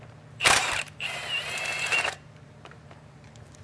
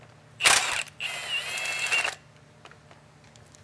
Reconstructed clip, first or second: first